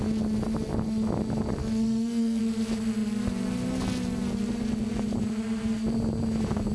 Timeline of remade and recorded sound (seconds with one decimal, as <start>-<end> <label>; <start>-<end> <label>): 0.0-1.6 recorded; 1.6-2.4 remade; 2.4-6.7 recorded